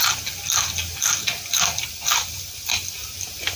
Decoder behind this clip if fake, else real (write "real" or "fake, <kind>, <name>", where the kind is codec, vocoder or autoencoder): real